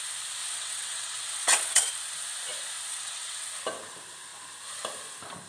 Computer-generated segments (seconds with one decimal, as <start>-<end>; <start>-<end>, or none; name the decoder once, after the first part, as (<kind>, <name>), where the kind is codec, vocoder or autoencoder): 0.4-1.9 (vocoder, WaveNeXt); 2.9-3.5